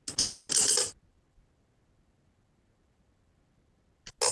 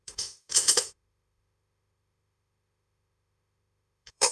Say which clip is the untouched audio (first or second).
first